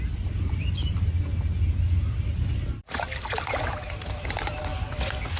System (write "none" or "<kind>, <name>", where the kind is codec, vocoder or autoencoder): none